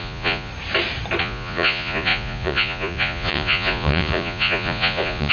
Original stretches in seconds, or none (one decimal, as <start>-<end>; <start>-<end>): 0.5-1.2

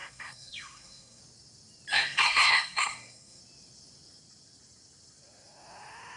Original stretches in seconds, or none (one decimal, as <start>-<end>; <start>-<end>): 1.2-1.9; 3.4-6.2

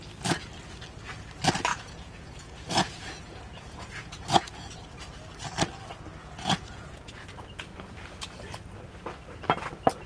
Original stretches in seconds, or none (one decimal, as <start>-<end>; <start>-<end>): 0.0-1.7; 4.7-6.2; 7.1-10.1

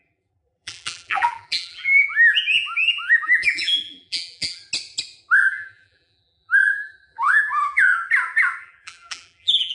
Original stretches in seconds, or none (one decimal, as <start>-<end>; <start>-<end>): 4.6-5.4; 8.0-8.6